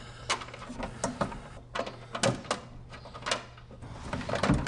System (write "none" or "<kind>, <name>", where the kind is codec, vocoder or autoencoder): none